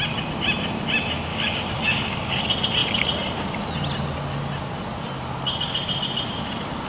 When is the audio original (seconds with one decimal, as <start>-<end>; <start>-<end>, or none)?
0.0-1.3; 2.4-6.9